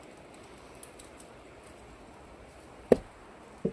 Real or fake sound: real